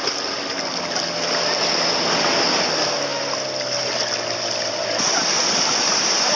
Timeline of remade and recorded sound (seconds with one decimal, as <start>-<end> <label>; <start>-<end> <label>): 0.0-6.4 recorded